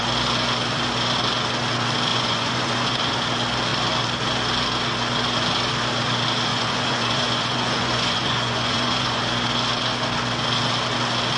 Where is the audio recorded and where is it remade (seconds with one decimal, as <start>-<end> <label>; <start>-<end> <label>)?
0.0-2.1 recorded; 2.1-3.0 remade; 3.0-6.5 recorded; 6.5-9.2 remade; 9.2-11.4 recorded

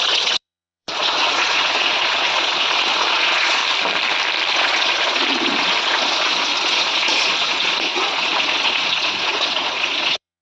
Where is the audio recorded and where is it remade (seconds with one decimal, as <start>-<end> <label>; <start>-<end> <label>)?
0.0-3.6 remade; 3.6-4.5 recorded; 4.5-10.4 remade